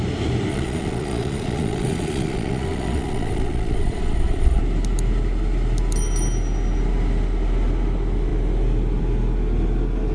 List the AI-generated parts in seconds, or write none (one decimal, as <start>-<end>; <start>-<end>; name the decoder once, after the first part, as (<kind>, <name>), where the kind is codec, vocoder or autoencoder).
0.5-4.6 (vocoder, Vocos)